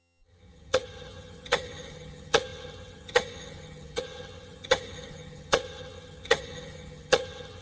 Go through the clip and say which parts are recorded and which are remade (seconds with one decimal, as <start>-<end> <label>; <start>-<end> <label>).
0.0-7.6 remade